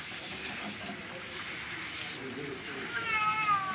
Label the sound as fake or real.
real